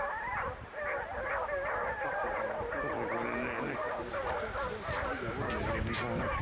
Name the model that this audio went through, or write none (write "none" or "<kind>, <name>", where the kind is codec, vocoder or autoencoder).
none